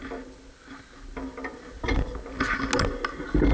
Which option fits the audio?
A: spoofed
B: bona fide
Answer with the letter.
B